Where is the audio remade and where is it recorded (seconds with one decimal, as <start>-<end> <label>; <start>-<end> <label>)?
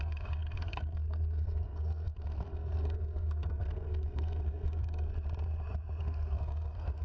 0.0-5.1 remade; 5.1-6.0 recorded; 6.0-7.0 remade